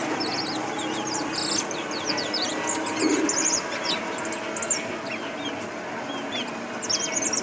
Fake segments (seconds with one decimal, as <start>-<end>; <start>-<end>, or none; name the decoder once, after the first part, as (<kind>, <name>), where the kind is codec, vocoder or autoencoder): none